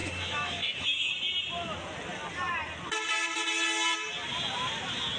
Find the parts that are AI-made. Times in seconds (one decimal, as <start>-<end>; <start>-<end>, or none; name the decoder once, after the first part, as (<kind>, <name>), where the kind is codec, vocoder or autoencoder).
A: 0.0-1.1 (autoencoder, DAC-VAE)